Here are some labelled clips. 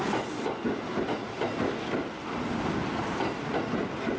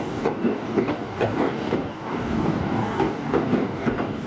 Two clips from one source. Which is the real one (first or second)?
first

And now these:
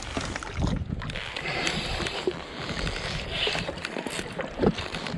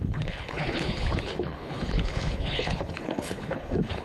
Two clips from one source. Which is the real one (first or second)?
first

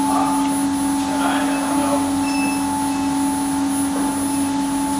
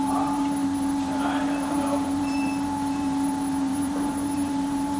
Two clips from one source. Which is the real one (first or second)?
first